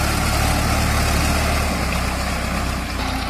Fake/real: real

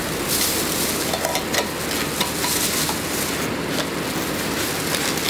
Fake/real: real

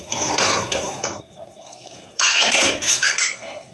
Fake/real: fake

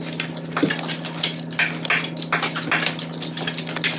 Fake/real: real